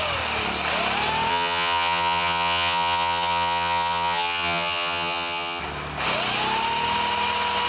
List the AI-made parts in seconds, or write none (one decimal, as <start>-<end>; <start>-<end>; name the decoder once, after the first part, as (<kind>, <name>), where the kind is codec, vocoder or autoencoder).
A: 1.3-5.6 (vocoder, HiFi-GAN)